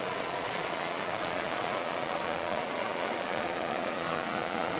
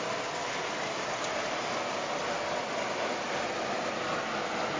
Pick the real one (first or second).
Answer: second